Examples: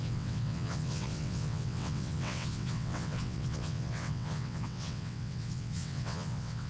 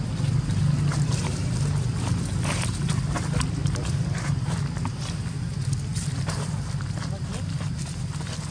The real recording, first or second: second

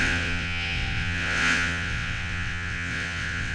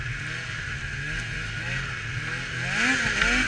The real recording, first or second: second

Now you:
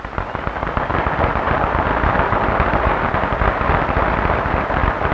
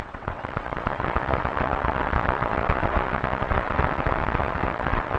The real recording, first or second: first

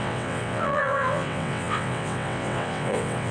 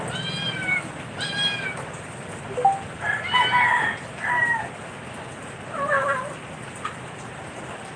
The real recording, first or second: second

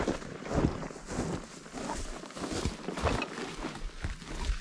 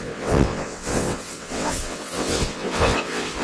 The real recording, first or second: first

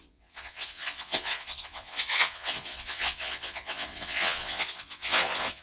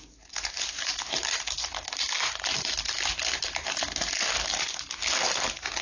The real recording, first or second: second